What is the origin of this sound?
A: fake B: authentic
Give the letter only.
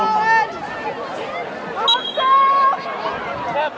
B